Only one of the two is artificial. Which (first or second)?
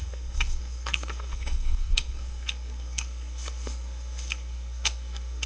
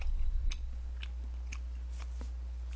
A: first